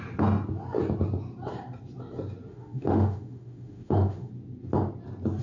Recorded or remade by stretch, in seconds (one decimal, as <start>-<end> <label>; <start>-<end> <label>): 0.0-2.5 recorded; 2.5-4.3 remade; 4.3-5.4 recorded